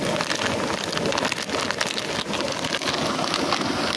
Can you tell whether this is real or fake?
real